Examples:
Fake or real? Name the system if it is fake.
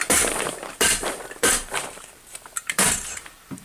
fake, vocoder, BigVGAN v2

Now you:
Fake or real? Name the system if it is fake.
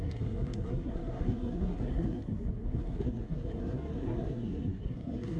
fake, codec, SNAC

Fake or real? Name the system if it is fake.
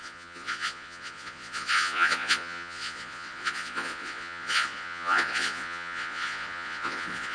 fake, vocoder, Vocos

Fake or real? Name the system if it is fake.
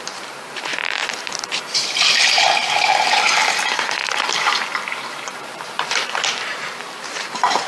fake, vocoder, BigVGAN v2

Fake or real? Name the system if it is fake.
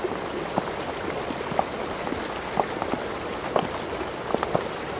real